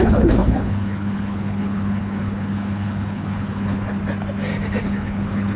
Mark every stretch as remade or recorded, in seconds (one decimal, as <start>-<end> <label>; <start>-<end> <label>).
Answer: 0.0-4.0 remade; 4.0-4.8 recorded; 4.8-5.6 remade